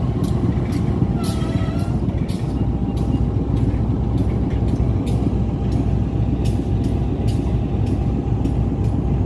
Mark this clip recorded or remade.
recorded